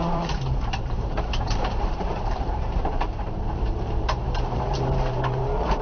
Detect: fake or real fake